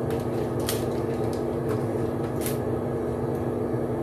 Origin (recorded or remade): recorded